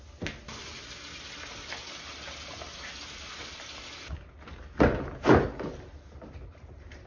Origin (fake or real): real